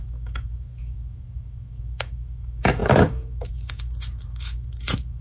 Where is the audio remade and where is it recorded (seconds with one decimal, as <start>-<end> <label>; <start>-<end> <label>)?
0.0-5.2 remade